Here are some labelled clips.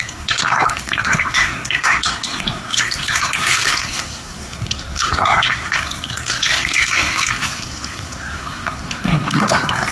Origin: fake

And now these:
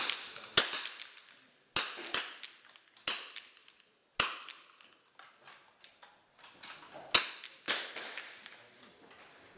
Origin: real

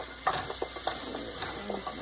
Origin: real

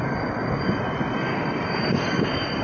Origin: real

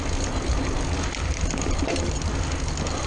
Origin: real